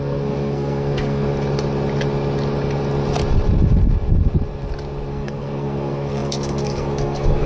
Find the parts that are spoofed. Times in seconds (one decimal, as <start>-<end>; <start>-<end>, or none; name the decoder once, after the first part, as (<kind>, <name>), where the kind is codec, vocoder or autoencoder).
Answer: 0.0-1.3 (codec, SNAC); 5.1-7.5